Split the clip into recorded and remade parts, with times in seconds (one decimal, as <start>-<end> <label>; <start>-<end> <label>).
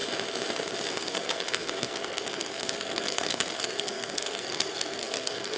0.0-0.9 recorded; 0.9-5.6 remade